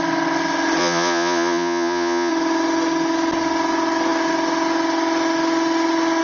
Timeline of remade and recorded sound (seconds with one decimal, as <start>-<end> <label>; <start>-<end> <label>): 0.0-0.8 recorded; 0.8-2.3 remade; 2.3-6.2 recorded